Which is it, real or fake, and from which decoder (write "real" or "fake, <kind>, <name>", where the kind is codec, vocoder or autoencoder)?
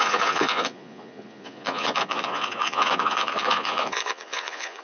fake, vocoder, Vocos